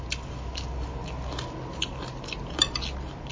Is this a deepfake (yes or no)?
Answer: no